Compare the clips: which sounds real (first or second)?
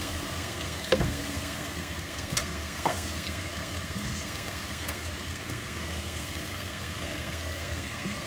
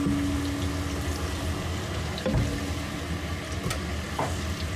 second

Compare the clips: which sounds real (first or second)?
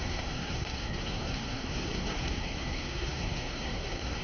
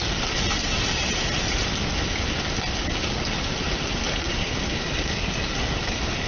second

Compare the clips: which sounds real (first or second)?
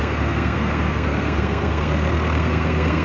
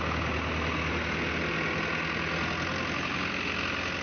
second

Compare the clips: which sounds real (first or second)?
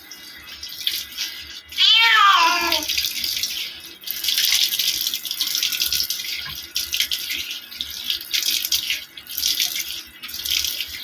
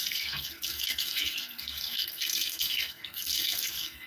first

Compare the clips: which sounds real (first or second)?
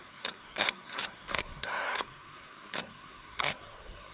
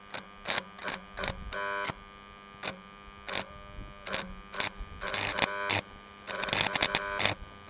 second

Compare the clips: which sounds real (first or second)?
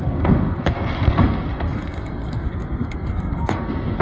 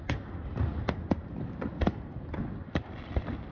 second